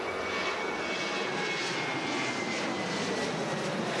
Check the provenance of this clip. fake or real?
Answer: real